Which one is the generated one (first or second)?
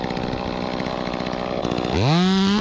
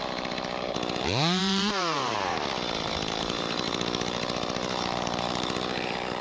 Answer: second